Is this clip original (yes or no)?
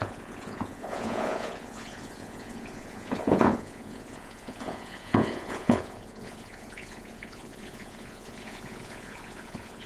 no